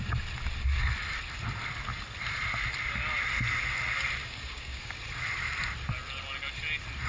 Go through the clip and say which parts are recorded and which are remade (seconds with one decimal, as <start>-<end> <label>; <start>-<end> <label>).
0.0-4.2 recorded; 4.2-5.0 remade; 5.0-7.1 recorded